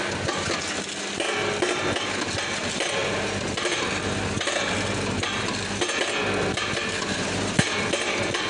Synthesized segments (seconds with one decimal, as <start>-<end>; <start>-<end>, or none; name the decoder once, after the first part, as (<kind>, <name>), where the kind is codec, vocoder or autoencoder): none